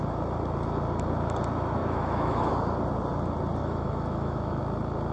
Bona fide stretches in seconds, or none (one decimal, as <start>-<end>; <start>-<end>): 0.0-1.8; 2.5-3.6; 4.6-5.1